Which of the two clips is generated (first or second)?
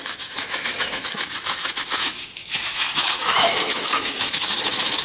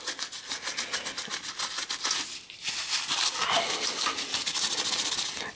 first